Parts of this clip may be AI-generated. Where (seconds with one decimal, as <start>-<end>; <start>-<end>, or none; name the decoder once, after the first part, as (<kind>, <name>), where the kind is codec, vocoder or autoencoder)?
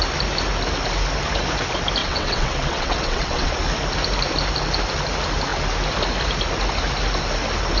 2.0-3.5 (vocoder, WaveNeXt)